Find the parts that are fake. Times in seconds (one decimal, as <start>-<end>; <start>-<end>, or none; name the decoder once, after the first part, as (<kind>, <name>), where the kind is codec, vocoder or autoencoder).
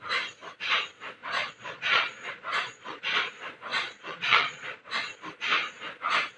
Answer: 1.2-3.3 (vocoder, Vocos); 3.7-4.9